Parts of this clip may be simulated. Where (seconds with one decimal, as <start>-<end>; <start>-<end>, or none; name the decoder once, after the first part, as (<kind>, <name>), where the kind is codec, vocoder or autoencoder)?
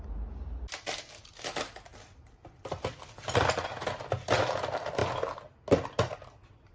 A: none